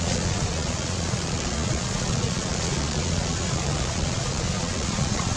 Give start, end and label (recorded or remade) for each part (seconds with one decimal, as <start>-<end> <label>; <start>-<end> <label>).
0.0-5.4 remade